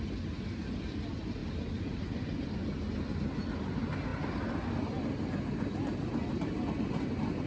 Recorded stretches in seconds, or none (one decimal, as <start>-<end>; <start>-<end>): 0.0-7.5